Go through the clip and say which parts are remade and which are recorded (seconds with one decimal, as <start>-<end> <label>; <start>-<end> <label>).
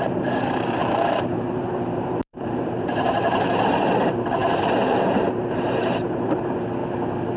0.0-6.8 remade; 6.8-7.4 recorded